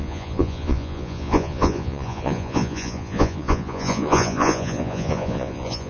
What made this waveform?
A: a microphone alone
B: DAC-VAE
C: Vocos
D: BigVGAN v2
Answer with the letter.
C